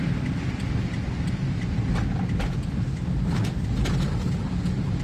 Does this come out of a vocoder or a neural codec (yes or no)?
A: no